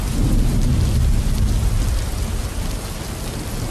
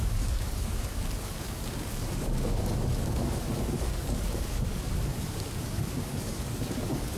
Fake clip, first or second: second